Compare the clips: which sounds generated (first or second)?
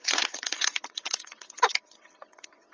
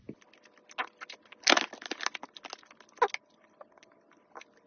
first